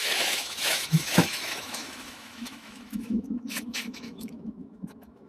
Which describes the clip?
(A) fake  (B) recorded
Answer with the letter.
A